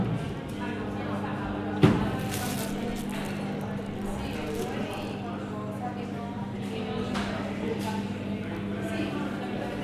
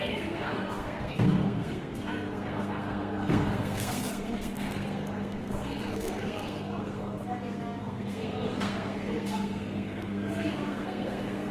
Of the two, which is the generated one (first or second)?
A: second